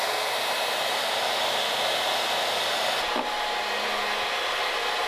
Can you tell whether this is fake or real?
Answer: real